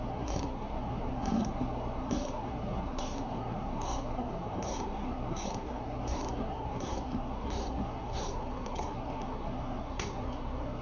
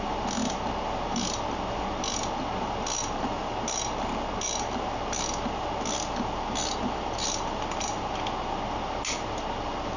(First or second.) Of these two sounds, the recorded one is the second